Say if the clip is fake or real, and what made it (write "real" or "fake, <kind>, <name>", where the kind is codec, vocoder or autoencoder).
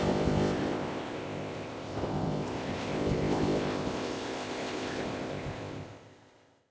fake, codec, ZipCodec